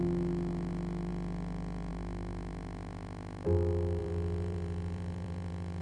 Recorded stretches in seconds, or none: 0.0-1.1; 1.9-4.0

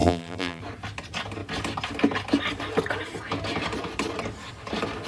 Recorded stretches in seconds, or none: 0.6-5.1

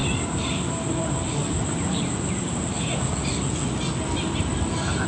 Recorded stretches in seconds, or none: 3.1-5.1

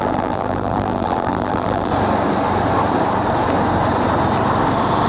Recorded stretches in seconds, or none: 1.9-5.1

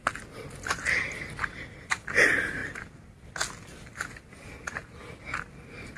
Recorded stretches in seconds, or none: 0.0-6.0

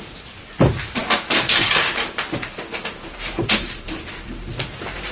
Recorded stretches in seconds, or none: 1.0-3.4

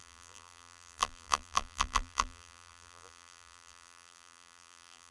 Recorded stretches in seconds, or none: none